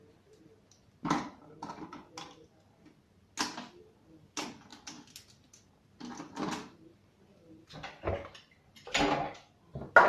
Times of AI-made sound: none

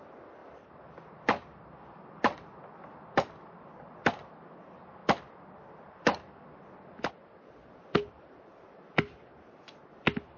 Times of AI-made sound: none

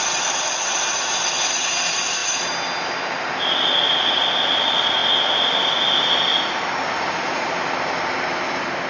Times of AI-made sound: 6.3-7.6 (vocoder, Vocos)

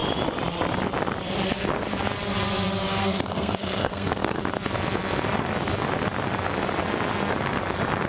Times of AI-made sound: 3.0-4.4 (codec, SNAC)

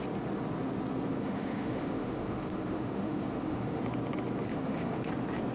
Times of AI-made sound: 1.1-3.8 (autoencoder, DAC-VAE); 4.5-5.1